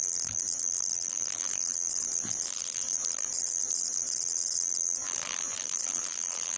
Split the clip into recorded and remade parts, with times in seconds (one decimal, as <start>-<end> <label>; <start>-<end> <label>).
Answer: 0.0-6.6 remade